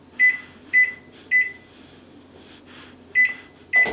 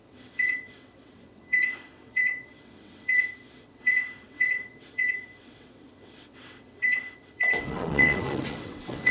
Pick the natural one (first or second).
first